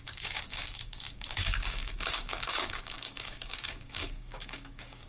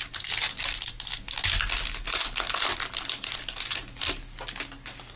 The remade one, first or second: first